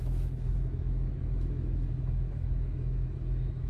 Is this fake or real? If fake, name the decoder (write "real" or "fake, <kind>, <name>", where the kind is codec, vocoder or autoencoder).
fake, autoencoder, DAC-VAE